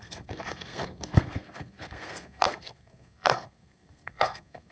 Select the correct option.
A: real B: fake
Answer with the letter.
B